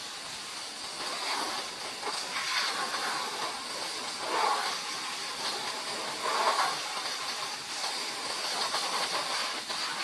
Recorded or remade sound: recorded